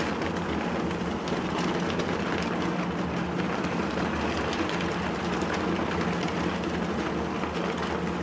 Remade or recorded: recorded